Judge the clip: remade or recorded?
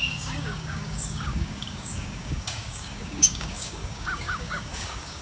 remade